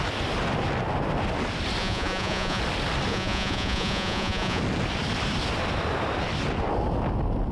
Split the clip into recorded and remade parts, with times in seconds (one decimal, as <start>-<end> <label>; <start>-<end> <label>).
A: 0.0-1.8 recorded; 1.8-2.6 remade; 2.6-3.1 recorded; 3.1-4.6 remade; 4.6-7.5 recorded